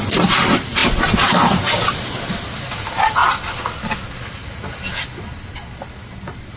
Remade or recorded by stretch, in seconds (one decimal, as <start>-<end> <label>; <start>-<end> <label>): 0.0-6.6 recorded